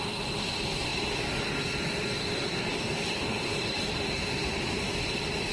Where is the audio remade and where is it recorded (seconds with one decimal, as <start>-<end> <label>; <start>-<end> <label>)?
0.0-3.3 recorded; 3.3-4.9 remade; 4.9-5.5 recorded